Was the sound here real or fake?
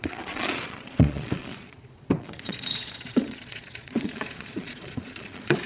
fake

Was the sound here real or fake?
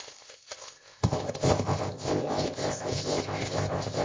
fake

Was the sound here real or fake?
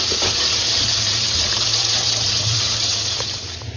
fake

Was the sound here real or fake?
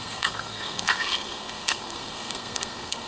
fake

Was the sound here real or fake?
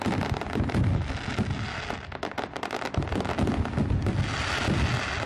real